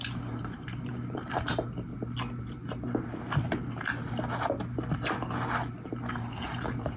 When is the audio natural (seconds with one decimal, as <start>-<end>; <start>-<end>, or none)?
1.9-6.1